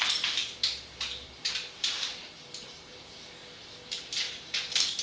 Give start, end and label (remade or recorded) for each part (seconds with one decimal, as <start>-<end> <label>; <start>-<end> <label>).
0.0-3.4 remade; 3.4-4.0 recorded; 4.0-5.0 remade